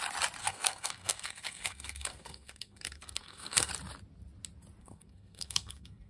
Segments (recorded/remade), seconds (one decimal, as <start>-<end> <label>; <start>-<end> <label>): 0.0-0.4 recorded; 0.4-3.7 remade; 3.7-4.8 recorded; 4.8-6.1 remade